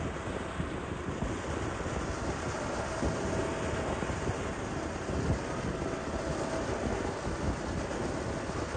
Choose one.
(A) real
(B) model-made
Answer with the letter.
A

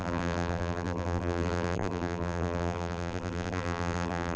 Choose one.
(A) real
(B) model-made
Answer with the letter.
B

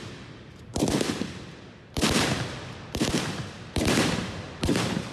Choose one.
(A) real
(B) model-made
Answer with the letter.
B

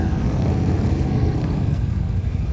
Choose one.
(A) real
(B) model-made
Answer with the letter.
B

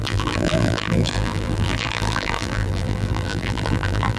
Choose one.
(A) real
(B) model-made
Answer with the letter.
B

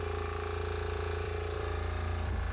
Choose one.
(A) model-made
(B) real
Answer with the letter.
A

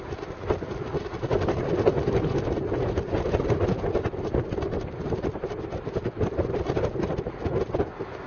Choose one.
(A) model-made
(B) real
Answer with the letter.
B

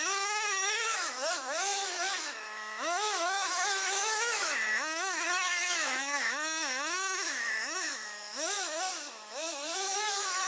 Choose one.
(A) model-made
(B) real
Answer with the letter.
A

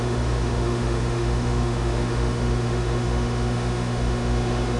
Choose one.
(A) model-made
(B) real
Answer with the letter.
A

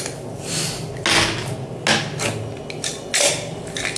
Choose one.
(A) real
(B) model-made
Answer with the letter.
A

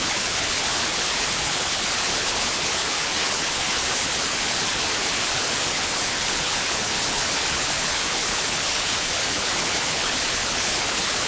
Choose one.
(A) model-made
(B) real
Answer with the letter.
A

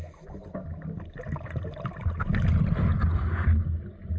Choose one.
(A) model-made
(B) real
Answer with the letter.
B